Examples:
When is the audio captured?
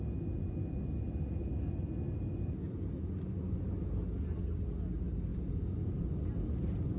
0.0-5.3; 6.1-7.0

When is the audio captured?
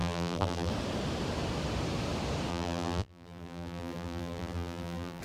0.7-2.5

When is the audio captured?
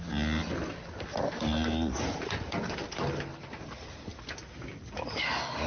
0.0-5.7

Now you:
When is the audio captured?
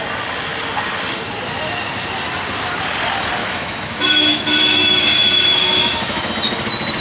0.0-3.4; 6.3-7.0